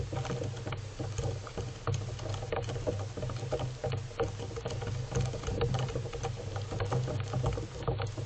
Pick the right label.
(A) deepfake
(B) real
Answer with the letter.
B